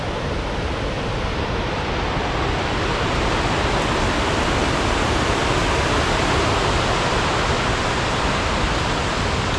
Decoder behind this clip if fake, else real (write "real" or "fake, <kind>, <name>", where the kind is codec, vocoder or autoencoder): real